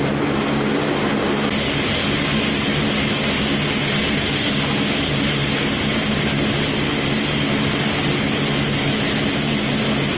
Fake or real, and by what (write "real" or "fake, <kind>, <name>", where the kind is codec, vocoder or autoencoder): real